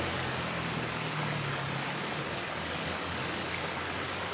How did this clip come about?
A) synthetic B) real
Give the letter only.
A